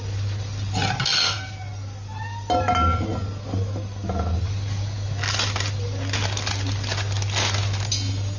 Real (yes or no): yes